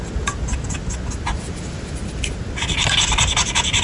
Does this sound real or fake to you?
real